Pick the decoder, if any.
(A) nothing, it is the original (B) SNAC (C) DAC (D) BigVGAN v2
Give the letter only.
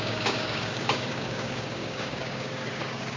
C